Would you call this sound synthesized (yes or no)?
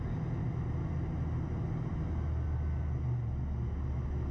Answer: no